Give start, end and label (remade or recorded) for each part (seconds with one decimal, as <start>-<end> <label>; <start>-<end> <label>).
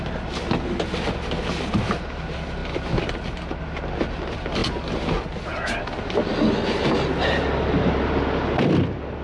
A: 0.0-9.2 recorded